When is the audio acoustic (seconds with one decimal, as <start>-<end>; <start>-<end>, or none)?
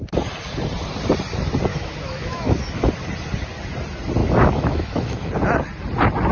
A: 0.0-1.7; 2.9-4.2; 5.3-6.3